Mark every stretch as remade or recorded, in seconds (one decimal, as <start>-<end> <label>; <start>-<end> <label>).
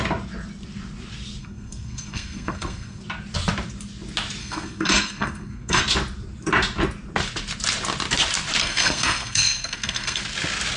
0.0-1.4 recorded; 1.4-3.0 remade; 3.0-4.4 recorded; 4.4-5.8 remade; 5.8-8.6 recorded; 8.6-10.2 remade; 10.2-10.8 recorded